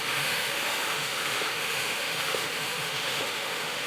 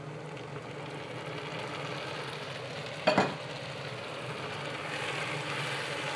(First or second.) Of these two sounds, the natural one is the second